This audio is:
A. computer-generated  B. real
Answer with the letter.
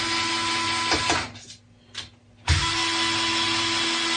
B